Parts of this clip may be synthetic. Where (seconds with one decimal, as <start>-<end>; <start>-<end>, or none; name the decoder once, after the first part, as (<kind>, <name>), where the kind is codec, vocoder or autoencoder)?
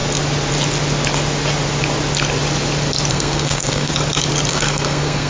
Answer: 3.1-3.9 (codec, SNAC); 4.5-5.3